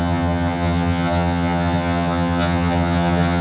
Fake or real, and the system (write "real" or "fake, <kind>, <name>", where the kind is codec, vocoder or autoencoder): fake, vocoder, HiFi-GAN